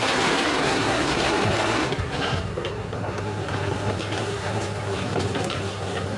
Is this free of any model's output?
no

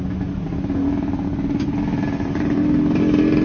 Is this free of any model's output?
yes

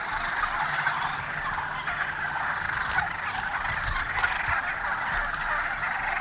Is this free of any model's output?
yes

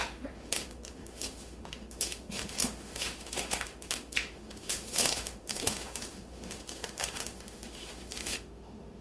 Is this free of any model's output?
no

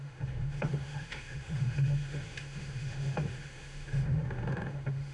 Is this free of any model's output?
no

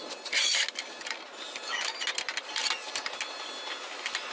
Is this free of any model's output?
yes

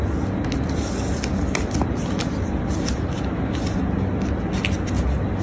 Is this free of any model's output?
yes